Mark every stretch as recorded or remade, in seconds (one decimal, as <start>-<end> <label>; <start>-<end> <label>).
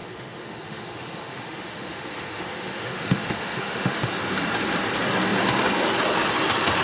0.0-4.1 remade; 4.1-6.8 recorded